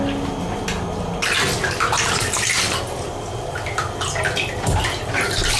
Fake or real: real